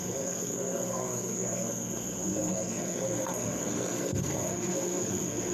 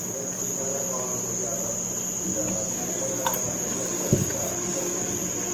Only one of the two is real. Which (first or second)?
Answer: second